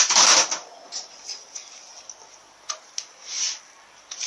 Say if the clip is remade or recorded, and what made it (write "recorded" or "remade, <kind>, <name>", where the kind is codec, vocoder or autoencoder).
recorded